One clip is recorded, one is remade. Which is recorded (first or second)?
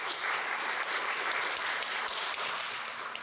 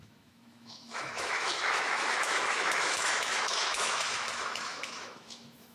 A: first